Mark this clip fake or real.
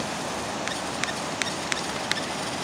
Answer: real